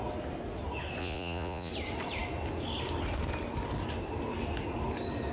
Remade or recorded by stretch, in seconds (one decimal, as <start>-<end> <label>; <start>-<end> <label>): 0.0-1.0 recorded; 1.0-1.7 remade; 1.7-5.3 recorded